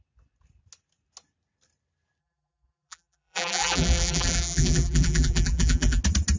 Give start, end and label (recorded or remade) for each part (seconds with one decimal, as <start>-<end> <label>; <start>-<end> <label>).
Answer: 0.0-2.2 recorded; 2.2-6.0 remade; 6.0-6.4 recorded